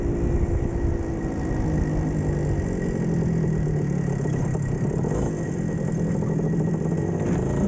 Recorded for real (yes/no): yes